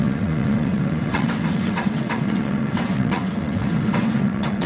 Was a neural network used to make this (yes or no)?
yes